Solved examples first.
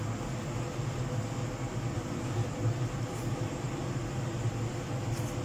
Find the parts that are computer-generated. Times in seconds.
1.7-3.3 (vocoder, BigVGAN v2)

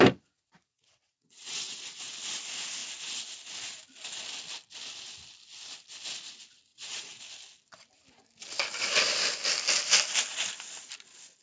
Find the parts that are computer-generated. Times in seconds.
0.7-2.0 (vocoder, WaveNeXt); 6.7-7.2